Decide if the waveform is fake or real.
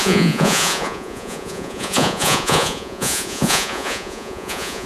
fake